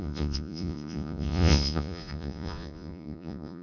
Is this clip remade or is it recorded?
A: remade